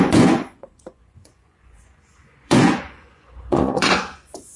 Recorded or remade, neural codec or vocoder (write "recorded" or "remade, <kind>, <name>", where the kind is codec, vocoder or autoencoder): remade, vocoder, Vocos